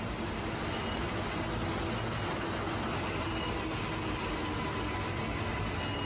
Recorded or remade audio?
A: recorded